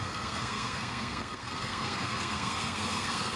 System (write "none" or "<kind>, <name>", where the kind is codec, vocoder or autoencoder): codec, SNAC